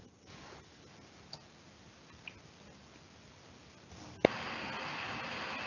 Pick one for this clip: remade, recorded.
recorded